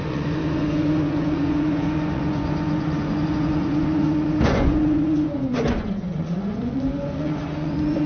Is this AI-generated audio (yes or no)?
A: yes